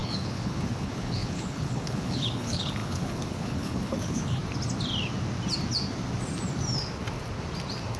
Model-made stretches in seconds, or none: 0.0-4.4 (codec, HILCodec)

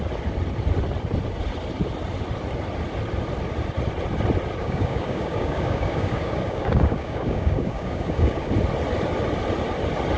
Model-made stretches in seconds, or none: 4.6-8.5 (codec, DAC)

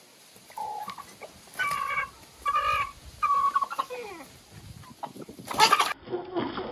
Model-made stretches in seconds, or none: none

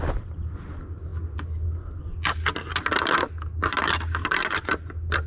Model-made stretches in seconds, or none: none

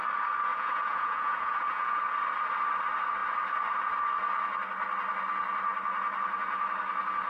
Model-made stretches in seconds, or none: 0.5-2.0 (vocoder, Vocos)

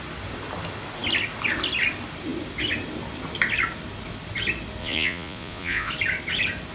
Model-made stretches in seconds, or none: 4.8-5.9 (vocoder, Vocos)